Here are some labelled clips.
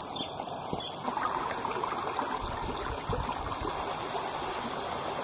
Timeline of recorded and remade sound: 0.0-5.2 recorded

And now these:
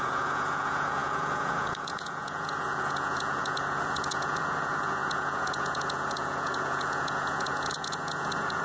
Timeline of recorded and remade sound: 0.0-8.6 remade

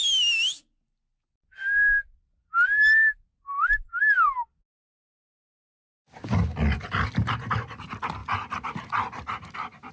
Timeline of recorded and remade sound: 0.0-9.9 recorded

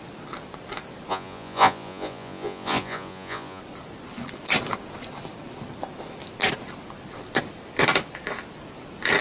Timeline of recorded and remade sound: 0.0-1.1 recorded; 1.1-3.6 remade; 3.6-9.2 recorded

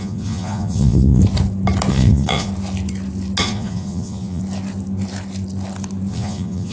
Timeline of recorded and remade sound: 0.0-1.2 remade; 1.2-1.9 recorded; 1.9-2.5 remade; 2.5-3.4 recorded; 3.4-4.4 remade; 4.4-6.1 recorded; 6.1-6.7 remade